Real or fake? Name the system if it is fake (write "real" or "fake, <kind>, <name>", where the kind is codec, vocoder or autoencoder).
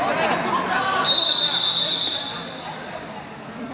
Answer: real